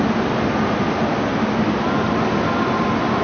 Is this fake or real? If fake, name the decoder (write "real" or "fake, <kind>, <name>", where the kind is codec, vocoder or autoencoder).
real